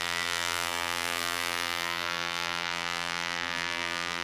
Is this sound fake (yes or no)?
yes